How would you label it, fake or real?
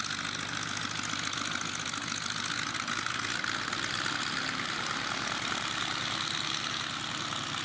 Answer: real